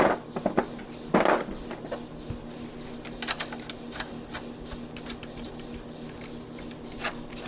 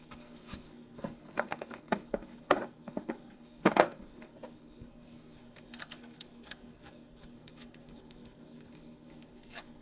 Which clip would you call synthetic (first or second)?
second